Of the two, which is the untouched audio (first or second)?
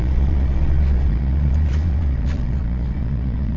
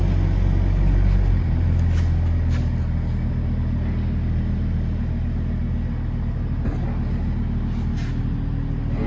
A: second